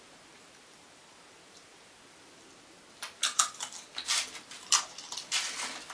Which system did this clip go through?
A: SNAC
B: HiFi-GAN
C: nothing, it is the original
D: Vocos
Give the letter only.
C